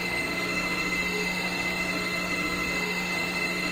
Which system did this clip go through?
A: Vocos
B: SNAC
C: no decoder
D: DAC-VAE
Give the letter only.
D